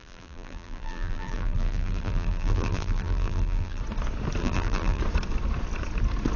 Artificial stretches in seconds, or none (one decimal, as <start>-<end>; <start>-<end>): 0.0-3.8; 4.4-5.0

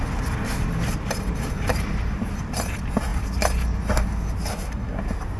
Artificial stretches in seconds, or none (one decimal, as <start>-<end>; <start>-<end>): 4.5-5.0